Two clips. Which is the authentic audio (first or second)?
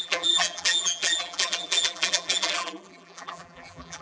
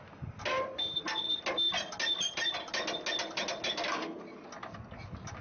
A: second